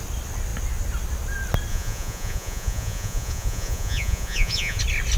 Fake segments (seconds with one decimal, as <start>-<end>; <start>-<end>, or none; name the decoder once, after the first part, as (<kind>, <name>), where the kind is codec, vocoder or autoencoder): 1.7-4.8 (vocoder, Vocos)